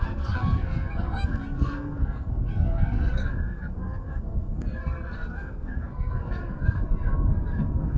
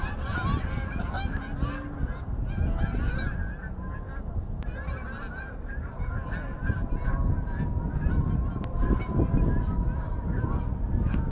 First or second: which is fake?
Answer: first